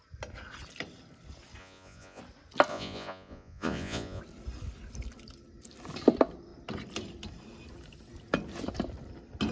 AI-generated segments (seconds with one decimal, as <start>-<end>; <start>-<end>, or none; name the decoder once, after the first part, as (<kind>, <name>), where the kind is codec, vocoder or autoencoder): 1.6-2.2 (vocoder, Vocos); 2.7-4.2